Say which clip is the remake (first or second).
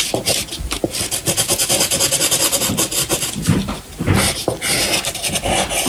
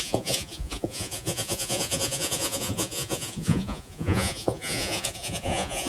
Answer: second